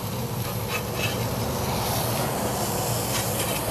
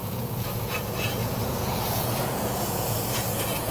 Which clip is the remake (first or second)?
second